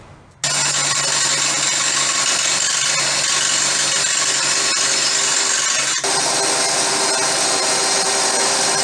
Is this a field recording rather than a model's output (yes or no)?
yes